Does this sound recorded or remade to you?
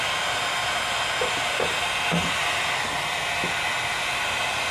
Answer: recorded